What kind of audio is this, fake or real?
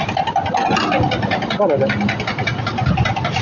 real